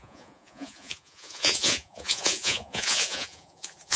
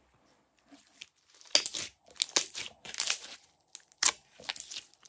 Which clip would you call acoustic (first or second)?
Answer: second